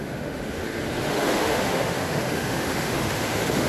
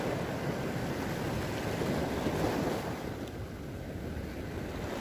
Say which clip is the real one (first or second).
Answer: second